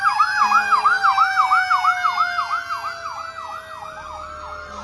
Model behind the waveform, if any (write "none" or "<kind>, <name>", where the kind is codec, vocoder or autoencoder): none